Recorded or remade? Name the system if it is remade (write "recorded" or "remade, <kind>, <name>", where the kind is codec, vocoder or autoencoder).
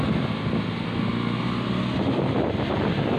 recorded